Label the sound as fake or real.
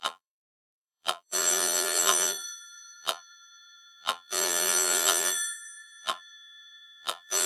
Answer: fake